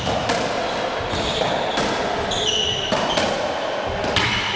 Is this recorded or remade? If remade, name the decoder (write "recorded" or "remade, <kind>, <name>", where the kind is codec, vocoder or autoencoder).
recorded